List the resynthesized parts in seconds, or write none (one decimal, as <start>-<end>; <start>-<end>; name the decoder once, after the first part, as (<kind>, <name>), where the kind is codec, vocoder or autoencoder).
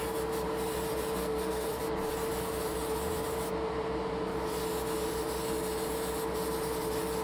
1.2-1.8 (codec, SNAC)